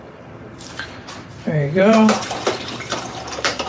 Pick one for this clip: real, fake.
fake